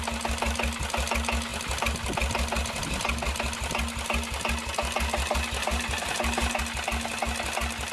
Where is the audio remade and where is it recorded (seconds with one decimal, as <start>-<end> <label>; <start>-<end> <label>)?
0.0-5.6 recorded; 5.6-6.6 remade; 6.6-7.9 recorded